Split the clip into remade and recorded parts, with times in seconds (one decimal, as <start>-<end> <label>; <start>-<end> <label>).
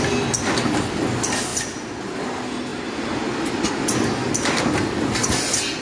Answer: 0.0-5.8 recorded